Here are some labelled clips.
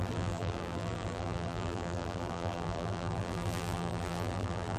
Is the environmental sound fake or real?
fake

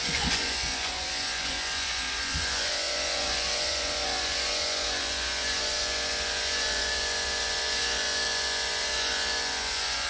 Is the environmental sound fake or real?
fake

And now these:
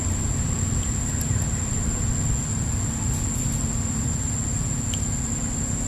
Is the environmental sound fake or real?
real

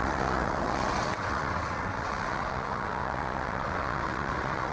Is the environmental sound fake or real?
fake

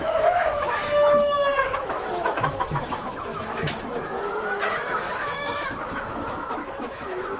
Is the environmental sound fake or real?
fake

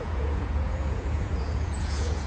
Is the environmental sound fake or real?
fake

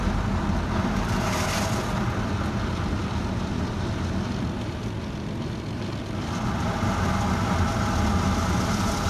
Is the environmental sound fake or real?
real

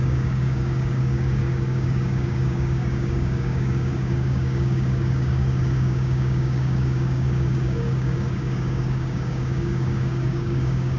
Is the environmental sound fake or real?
fake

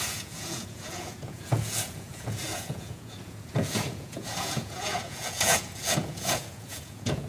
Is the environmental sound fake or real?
fake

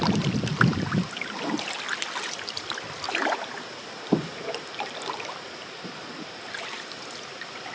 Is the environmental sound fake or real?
fake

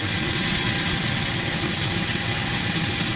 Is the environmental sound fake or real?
fake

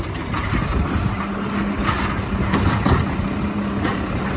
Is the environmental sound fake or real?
real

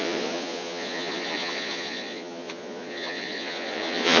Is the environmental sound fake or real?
fake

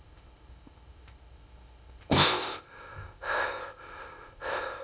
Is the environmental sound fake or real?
fake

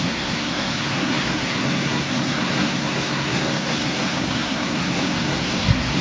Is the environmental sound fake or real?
fake